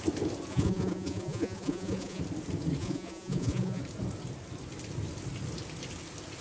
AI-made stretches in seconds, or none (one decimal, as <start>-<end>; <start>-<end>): 0.5-2.2; 2.8-3.8